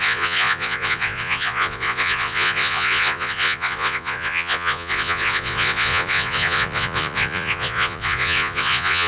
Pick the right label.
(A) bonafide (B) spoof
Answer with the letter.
B